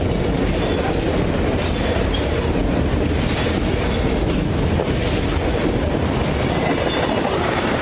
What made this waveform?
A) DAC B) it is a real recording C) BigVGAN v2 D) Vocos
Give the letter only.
B